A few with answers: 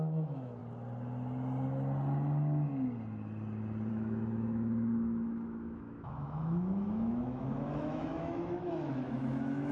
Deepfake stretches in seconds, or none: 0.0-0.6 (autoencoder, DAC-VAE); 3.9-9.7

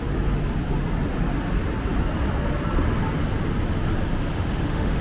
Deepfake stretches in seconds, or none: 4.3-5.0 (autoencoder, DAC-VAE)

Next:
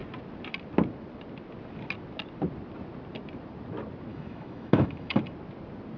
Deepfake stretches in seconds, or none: 4.1-5.2 (autoencoder, DAC-VAE)